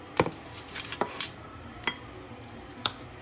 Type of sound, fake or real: fake